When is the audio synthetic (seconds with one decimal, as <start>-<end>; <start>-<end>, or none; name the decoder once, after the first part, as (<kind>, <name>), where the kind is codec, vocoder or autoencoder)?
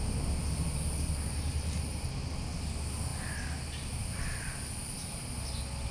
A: none